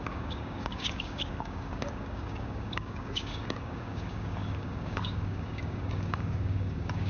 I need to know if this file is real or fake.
fake